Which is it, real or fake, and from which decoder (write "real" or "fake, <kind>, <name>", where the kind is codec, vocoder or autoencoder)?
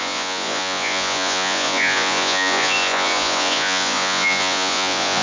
fake, vocoder, Vocos